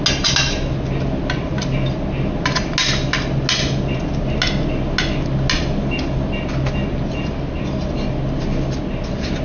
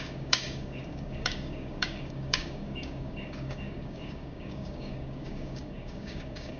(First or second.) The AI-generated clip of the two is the second